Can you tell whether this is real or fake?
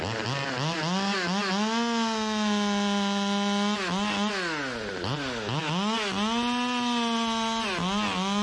real